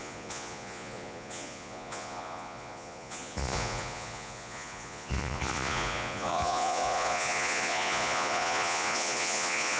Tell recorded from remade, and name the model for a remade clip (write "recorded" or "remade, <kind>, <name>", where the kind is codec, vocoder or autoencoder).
remade, vocoder, Vocos